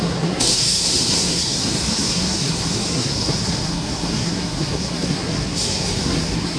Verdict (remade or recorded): remade